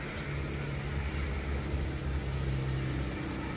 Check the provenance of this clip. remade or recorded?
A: recorded